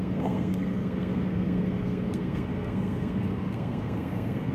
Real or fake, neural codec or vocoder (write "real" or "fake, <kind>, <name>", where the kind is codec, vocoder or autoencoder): fake, codec, SNAC